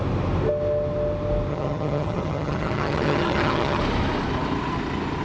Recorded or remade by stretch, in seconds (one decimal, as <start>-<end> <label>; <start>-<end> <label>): 0.0-1.5 recorded; 1.5-3.8 remade; 3.8-5.2 recorded